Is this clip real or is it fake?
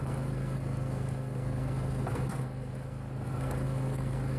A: fake